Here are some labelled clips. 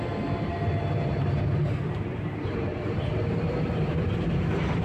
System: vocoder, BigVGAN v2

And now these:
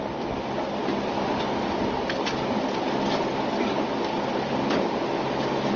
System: none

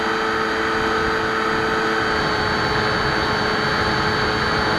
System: none